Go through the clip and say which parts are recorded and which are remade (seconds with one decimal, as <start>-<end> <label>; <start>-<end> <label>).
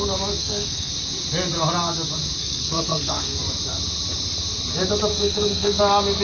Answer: 0.0-0.4 recorded; 0.4-0.9 remade; 0.9-2.4 recorded; 2.4-3.4 remade; 3.4-5.1 recorded; 5.1-5.8 remade; 5.8-6.2 recorded